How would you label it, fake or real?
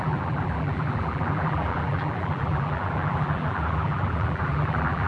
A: fake